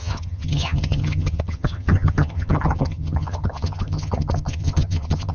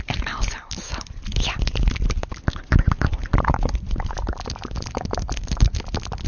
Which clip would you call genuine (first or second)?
second